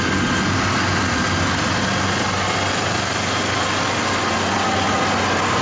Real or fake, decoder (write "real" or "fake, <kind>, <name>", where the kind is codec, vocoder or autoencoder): real